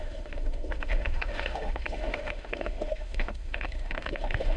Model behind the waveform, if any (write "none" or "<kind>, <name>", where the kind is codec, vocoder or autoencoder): autoencoder, DAC-VAE